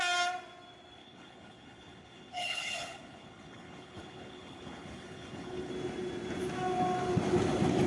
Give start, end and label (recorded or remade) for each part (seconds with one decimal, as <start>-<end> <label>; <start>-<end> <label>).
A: 0.0-1.0 recorded; 1.0-5.7 remade; 5.7-7.9 recorded